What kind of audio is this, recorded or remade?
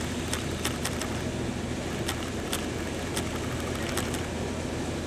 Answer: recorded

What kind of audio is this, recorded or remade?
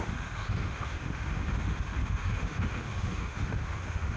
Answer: remade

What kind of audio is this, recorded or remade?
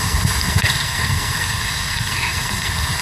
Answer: remade